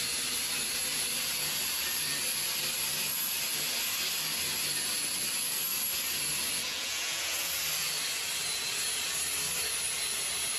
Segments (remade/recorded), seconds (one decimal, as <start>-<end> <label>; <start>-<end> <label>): 0.0-6.7 recorded; 6.7-7.5 remade; 7.5-10.6 recorded